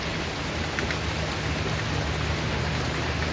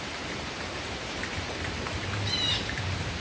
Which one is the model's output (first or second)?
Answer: second